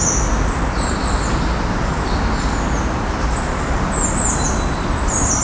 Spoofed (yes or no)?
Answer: no